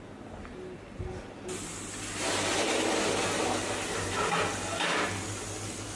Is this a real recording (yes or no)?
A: yes